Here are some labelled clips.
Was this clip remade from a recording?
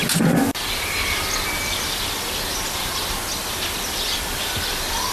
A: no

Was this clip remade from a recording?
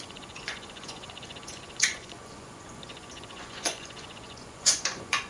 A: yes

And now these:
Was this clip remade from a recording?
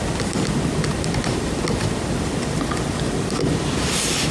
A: no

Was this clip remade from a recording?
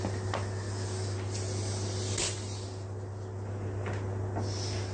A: no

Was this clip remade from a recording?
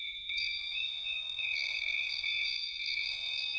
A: yes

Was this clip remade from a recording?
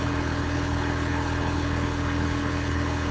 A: yes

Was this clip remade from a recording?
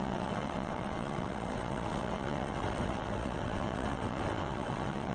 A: yes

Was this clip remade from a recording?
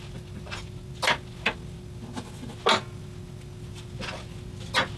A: no